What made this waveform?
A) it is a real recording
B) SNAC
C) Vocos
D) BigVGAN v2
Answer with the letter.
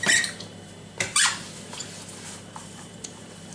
D